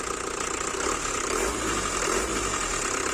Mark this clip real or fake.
real